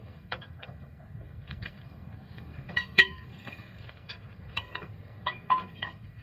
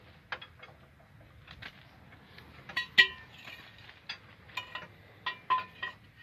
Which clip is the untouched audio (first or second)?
second